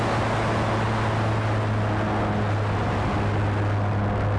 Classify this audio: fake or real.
real